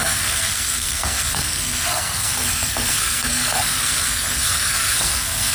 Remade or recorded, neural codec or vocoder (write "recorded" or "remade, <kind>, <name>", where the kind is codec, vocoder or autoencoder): remade, codec, SNAC